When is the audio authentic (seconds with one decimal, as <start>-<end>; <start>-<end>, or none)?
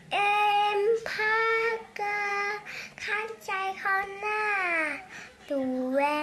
0.0-1.0; 1.7-6.2